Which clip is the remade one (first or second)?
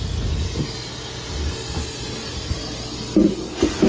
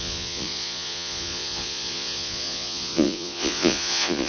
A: second